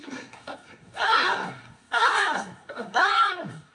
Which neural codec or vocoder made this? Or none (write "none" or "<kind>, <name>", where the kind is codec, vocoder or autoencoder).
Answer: codec, SNAC